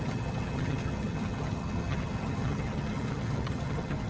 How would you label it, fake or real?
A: fake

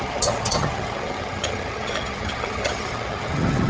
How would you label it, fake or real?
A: fake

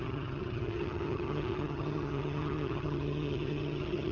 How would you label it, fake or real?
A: fake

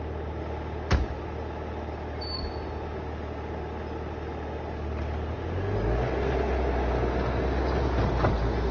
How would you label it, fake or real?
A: real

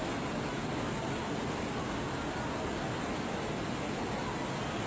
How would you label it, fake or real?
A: real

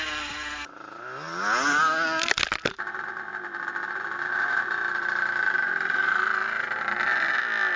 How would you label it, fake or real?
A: real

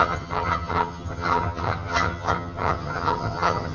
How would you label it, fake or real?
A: fake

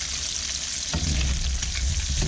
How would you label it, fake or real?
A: real